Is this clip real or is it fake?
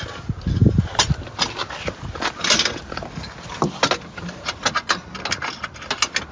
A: real